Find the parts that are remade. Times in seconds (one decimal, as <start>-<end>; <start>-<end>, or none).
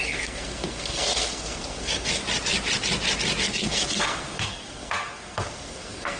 0.0-2.2; 3.4-6.2